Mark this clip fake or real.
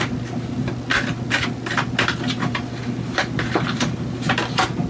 real